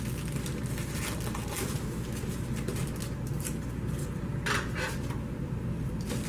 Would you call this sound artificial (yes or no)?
no